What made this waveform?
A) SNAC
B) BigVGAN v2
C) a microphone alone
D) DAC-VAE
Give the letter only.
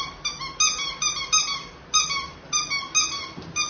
C